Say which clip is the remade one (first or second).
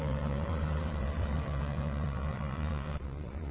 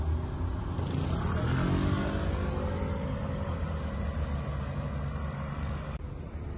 first